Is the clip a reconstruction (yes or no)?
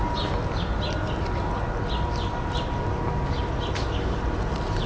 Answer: no